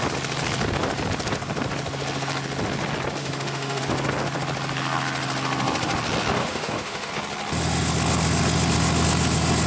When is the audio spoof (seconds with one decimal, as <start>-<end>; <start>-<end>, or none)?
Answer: 3.2-3.8; 6.4-7.1